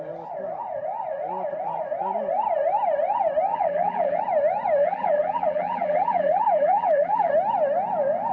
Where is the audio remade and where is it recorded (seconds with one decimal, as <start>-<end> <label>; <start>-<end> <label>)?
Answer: 0.0-3.5 recorded; 3.5-4.2 remade; 4.2-4.8 recorded; 4.8-7.3 remade; 7.3-8.3 recorded